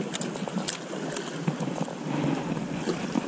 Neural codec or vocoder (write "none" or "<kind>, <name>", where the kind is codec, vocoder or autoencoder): none